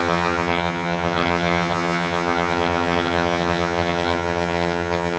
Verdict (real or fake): fake